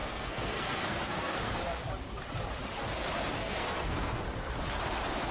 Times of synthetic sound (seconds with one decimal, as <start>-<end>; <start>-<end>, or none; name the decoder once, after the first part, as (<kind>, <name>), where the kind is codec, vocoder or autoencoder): 0.0-1.5 (codec, SNAC); 3.4-4.2